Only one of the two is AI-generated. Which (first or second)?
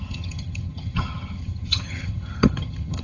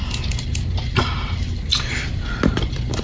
first